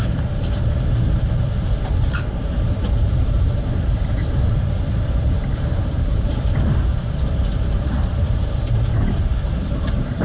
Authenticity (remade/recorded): remade